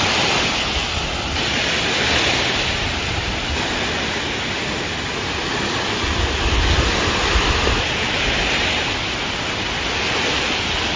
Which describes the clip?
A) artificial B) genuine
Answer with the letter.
B